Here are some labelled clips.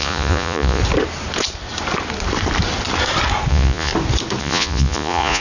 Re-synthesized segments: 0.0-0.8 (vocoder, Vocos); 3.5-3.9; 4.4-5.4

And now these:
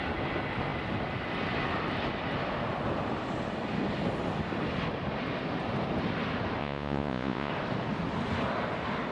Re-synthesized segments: 6.6-7.5 (vocoder, Vocos)

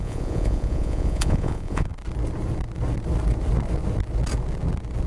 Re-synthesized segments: 0.0-1.9 (vocoder, Vocos)

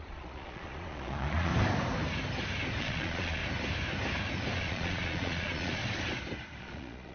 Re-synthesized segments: 0.0-1.5 (vocoder, Vocos); 2.8-3.4; 4.6-5.8; 6.6-7.1